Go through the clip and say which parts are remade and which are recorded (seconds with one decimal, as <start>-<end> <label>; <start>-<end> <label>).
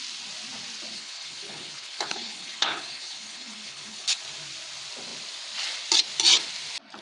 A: 0.0-0.9 recorded; 0.9-4.2 remade; 4.2-7.0 recorded